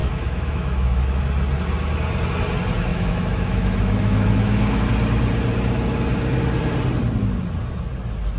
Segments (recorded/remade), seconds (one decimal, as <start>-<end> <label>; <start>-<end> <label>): 0.0-1.2 remade; 1.2-2.9 recorded; 2.9-4.9 remade; 4.9-8.4 recorded